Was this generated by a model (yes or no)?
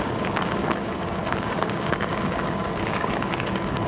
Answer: yes